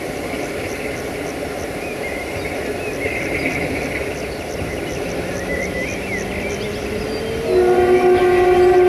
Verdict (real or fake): real